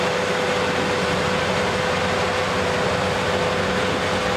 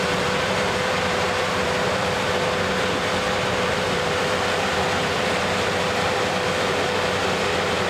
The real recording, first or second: first